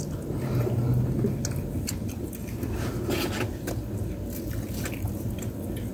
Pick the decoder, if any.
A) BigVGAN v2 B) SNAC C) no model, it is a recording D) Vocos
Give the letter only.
C